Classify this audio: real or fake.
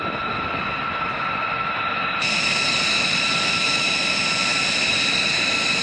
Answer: real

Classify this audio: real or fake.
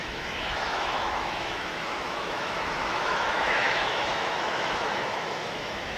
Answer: fake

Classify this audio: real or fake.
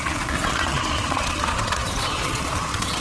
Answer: fake